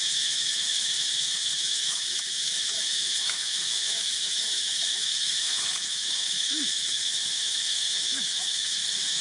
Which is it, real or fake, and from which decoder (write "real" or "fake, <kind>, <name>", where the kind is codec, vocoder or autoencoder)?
fake, autoencoder, DAC-VAE